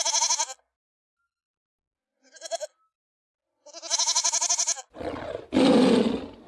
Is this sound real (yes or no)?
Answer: yes